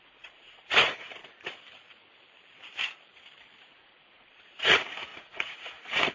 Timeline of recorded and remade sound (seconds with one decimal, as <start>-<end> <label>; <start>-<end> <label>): 0.0-1.2 remade; 1.2-3.6 recorded; 3.6-6.1 remade